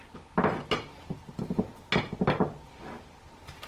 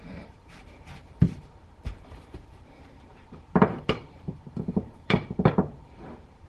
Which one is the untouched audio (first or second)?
first